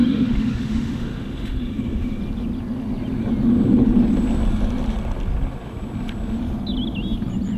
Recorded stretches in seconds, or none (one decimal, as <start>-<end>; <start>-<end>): 2.2-7.6